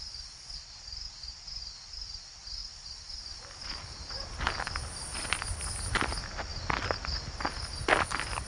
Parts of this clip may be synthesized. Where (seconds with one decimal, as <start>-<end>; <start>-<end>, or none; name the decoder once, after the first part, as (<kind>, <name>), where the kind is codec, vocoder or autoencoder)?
none

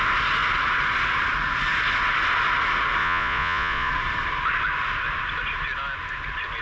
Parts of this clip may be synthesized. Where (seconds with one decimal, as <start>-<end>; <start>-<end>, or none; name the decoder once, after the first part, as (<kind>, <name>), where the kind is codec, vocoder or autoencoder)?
3.0-3.9 (vocoder, Vocos)

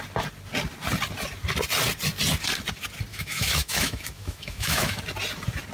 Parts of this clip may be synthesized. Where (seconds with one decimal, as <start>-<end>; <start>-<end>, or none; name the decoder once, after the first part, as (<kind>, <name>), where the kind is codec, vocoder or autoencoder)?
3.1-5.0 (autoencoder, DAC-VAE)

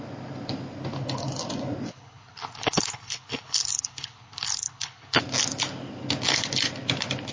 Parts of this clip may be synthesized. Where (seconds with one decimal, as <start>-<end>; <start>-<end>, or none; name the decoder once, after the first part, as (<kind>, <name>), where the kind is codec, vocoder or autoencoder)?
1.9-5.2 (codec, HILCodec)

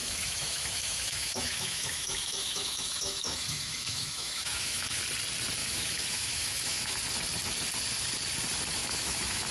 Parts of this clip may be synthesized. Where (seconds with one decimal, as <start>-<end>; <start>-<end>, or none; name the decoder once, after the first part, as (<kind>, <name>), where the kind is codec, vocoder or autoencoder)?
0.0-5.0 (autoencoder, DAC-VAE); 5.6-6.9; 8.8-9.5

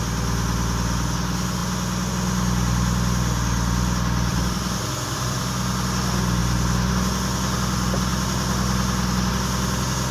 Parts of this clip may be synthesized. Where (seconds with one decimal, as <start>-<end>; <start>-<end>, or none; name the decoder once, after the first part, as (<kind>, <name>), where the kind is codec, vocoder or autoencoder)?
4.3-5.4 (vocoder, BigVGAN v2)

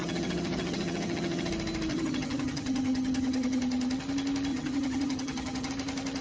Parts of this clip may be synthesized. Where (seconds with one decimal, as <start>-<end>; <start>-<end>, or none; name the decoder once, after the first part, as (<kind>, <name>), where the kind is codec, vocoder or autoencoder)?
0.0-1.5 (vocoder, HiFi-GAN); 1.9-3.6; 4.5-5.7